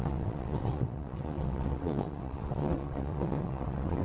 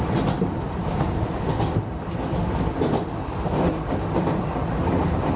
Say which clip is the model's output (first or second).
first